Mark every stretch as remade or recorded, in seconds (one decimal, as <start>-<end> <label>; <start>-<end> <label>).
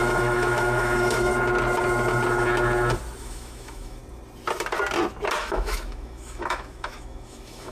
0.0-1.3 remade; 1.3-3.2 recorded; 3.2-4.0 remade; 4.0-5.4 recorded; 5.4-7.7 remade